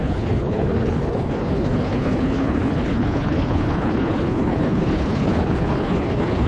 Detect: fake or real fake